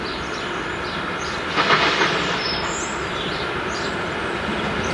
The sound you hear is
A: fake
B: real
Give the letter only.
B